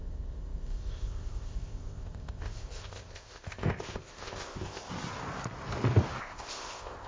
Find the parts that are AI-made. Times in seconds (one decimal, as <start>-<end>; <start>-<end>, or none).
0.0-4.9; 6.2-7.1